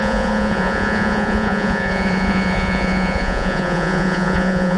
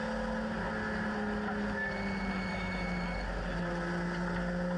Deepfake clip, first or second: first